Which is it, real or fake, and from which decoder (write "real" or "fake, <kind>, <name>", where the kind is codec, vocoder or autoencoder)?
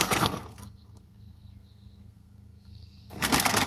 fake, codec, SNAC